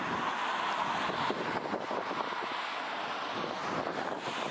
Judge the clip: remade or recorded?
recorded